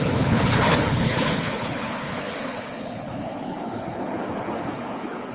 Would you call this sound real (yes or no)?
no